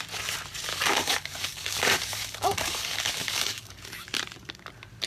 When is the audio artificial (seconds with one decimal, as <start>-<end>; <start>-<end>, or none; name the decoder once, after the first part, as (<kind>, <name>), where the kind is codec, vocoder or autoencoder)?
0.7-3.8 (codec, DAC)